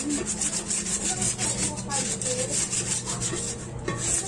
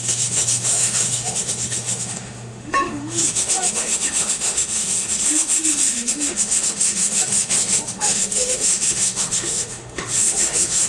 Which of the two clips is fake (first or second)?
second